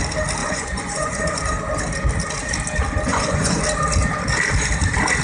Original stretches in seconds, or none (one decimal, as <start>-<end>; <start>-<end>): 0.0-0.4; 1.4-3.1; 3.6-5.2